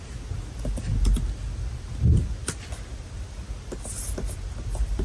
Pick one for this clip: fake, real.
real